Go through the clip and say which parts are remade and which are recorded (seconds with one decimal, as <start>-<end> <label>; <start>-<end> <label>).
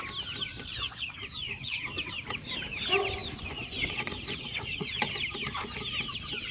0.0-0.5 recorded; 0.5-1.8 remade; 1.8-3.2 recorded; 3.2-5.1 remade; 5.1-6.5 recorded